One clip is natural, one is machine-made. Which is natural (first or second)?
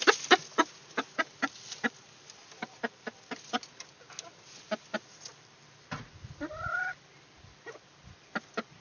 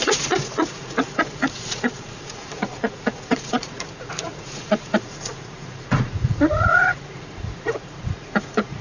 first